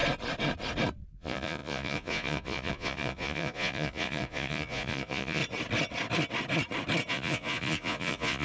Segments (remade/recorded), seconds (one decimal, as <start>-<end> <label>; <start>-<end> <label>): 0.0-1.1 recorded; 1.1-5.4 remade; 5.4-7.1 recorded; 7.1-8.4 remade